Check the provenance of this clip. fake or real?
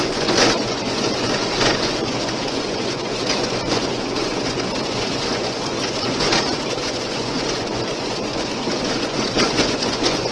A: fake